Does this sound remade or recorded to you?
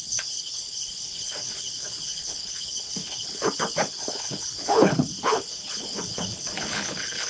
remade